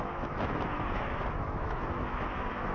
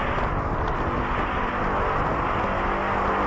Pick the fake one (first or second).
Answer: first